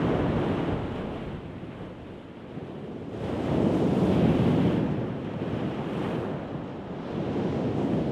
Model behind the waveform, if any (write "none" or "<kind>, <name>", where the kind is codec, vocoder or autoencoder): none